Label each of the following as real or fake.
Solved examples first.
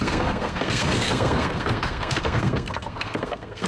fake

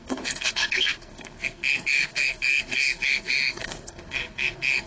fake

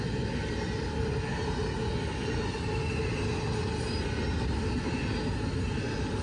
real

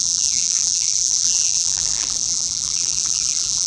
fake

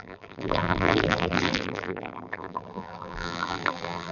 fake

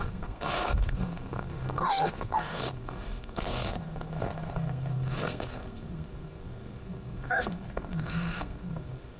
fake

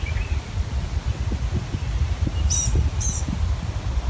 real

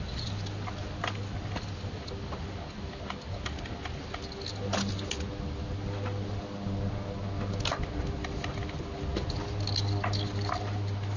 real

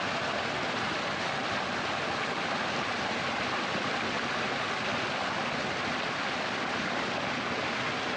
real